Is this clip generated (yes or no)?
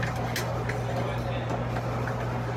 no